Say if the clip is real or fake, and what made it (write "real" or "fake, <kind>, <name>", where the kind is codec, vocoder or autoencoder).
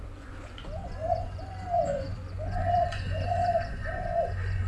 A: fake, vocoder, Vocos